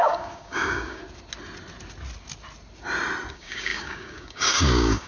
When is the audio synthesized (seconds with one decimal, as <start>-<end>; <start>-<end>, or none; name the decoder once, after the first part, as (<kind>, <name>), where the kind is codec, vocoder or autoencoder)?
0.0-1.0 (codec, DAC); 3.3-5.1